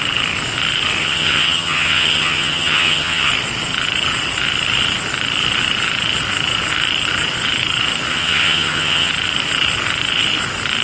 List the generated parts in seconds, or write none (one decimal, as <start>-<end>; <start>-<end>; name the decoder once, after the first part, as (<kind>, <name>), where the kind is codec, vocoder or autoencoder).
1.0-3.3 (vocoder, HiFi-GAN); 8.1-9.1